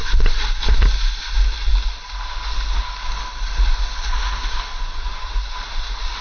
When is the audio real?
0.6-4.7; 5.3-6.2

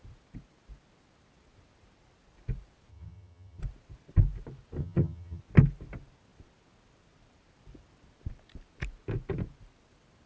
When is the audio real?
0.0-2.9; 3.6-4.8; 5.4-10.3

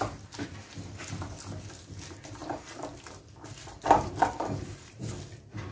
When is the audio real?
0.0-2.4; 5.1-5.7